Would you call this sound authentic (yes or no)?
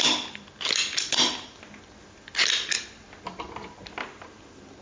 yes